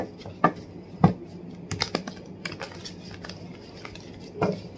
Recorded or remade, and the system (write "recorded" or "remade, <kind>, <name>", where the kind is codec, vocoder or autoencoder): recorded